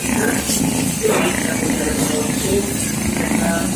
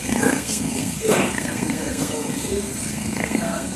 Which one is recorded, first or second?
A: first